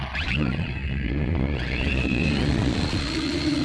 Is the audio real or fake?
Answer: fake